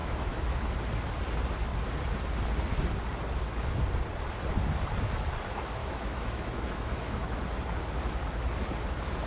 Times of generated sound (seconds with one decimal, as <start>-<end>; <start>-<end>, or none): 0.0-0.6; 5.8-7.4